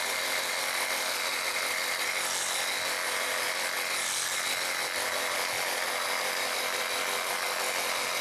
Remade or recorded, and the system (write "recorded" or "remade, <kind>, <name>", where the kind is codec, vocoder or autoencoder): recorded